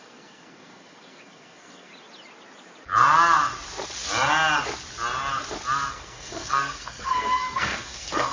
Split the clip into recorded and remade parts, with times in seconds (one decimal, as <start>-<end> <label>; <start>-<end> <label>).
0.0-1.9 remade; 1.9-5.9 recorded; 5.9-8.3 remade